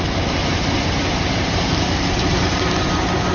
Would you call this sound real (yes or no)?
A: yes